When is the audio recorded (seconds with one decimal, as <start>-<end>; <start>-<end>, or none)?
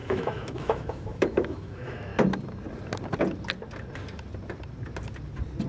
2.1-5.7